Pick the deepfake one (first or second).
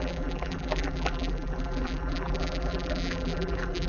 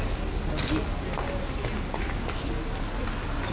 first